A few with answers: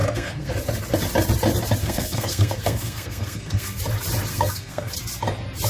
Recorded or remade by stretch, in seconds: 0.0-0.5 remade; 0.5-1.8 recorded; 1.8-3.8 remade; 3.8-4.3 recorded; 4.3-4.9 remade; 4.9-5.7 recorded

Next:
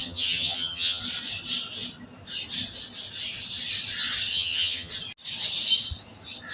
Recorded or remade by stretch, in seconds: 0.0-1.0 remade; 1.0-4.3 recorded; 4.3-4.9 remade; 4.9-6.5 recorded

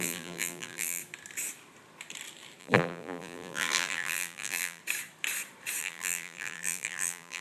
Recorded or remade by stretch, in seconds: 0.0-1.0 remade; 1.0-2.6 recorded; 2.6-4.8 remade; 4.8-5.8 recorded; 5.8-7.4 remade

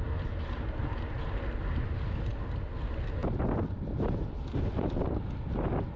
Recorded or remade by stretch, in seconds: 0.0-6.0 recorded

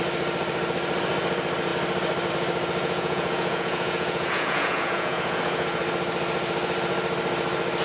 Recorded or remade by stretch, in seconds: 0.0-2.8 recorded; 2.8-5.8 remade; 5.8-7.8 recorded

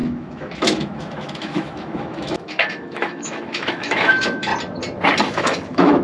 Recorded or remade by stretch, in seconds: 0.0-4.5 remade; 4.5-5.2 recorded; 5.2-6.0 remade